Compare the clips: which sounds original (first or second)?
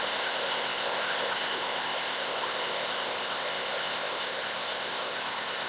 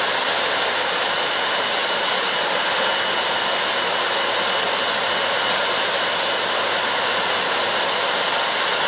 second